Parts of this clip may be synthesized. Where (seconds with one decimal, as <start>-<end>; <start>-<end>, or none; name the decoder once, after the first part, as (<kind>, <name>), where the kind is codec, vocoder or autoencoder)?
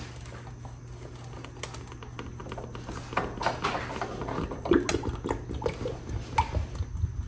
none